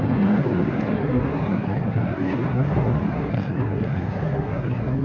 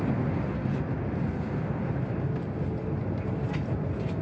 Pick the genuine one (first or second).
second